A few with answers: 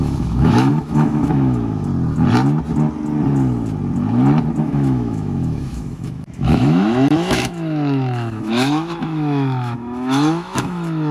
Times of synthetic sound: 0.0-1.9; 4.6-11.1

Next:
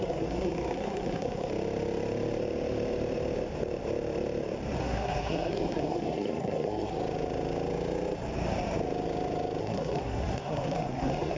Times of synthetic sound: 0.0-1.5; 4.8-6.9; 9.6-11.4

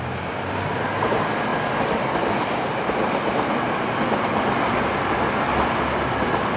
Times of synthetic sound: none

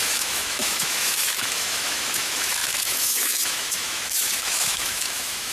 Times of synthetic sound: 0.0-5.5